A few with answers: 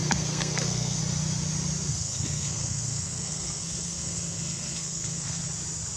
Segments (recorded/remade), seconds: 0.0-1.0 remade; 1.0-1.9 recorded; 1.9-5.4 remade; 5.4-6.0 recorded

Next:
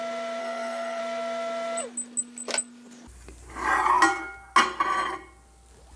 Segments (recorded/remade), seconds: 0.0-0.4 recorded; 0.4-1.0 remade; 1.0-6.0 recorded

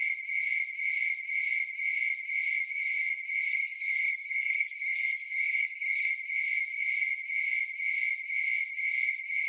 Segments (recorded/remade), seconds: 0.0-3.5 recorded; 3.5-6.1 remade; 6.1-9.5 recorded